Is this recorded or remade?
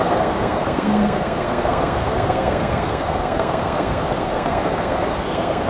remade